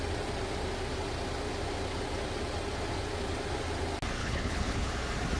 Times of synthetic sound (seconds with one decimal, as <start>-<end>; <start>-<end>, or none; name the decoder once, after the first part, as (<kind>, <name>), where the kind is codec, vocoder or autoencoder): 4.2-4.9 (codec, HILCodec)